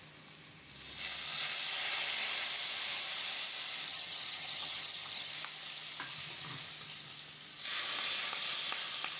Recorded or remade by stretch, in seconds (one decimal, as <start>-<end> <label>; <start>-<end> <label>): 0.0-3.9 recorded; 3.9-5.3 remade; 5.3-9.2 recorded